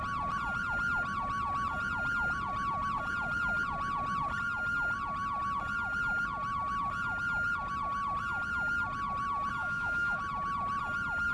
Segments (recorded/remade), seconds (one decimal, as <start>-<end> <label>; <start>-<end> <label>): 0.0-9.6 recorded; 9.6-10.2 remade; 10.2-11.3 recorded